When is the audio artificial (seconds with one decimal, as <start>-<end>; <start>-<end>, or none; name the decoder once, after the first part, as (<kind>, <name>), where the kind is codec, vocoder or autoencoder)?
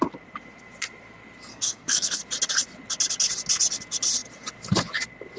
1.5-2.2 (codec, SNAC)